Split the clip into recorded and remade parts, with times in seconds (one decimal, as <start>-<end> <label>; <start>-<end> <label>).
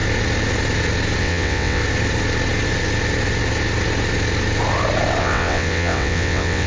0.0-1.2 recorded; 1.2-1.8 remade; 1.8-5.2 recorded; 5.2-6.7 remade